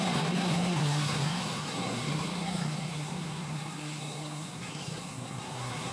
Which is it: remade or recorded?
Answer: remade